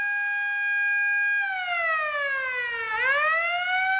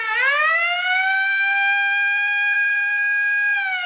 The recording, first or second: first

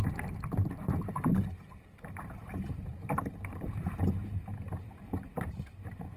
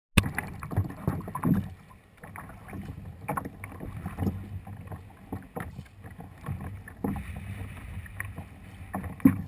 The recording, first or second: second